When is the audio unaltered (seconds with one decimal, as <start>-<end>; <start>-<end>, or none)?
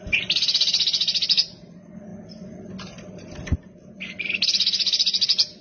0.0-5.6